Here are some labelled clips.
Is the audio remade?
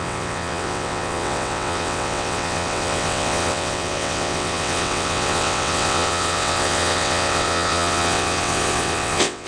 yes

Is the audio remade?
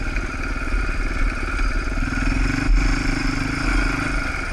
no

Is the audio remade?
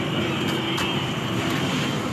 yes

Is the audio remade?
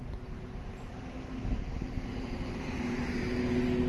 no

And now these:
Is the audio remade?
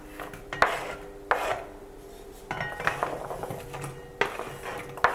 no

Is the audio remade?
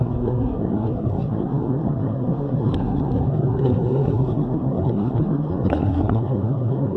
yes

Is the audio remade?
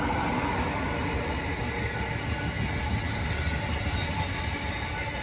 no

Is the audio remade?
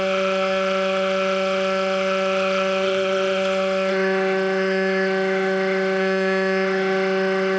yes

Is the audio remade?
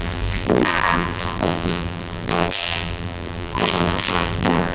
yes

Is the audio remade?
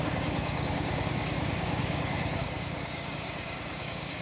yes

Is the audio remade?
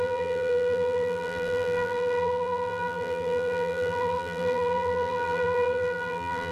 yes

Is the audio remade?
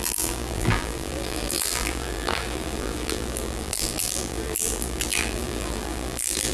yes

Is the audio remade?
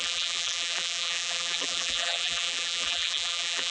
yes